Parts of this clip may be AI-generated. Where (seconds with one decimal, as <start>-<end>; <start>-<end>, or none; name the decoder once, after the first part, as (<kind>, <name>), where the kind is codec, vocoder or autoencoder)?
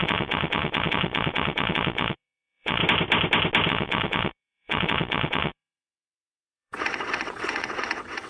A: 0.0-2.8 (vocoder, WaveNeXt); 3.7-8.3